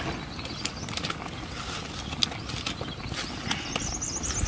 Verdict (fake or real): real